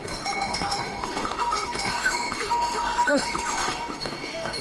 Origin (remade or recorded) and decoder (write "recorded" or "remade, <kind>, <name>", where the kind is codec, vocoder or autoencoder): remade, autoencoder, DAC-VAE